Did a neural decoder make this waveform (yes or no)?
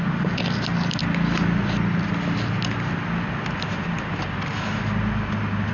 no